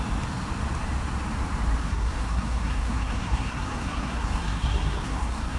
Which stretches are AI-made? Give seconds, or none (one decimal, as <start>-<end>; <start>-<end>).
1.8-5.6